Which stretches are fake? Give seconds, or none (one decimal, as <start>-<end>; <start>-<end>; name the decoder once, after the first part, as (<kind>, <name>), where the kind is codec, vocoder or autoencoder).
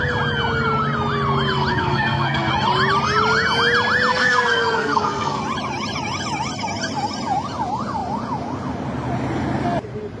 1.7-2.5 (codec, SNAC); 4.1-5.4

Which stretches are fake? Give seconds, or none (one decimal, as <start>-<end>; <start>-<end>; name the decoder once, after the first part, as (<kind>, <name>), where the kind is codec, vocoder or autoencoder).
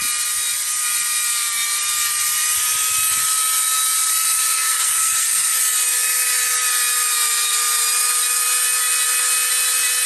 4.1-5.6 (codec, SNAC)